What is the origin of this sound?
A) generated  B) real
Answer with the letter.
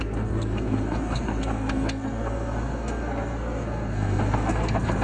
A